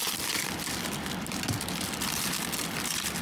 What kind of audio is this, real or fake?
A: real